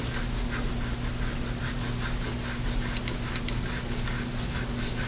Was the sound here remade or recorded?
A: recorded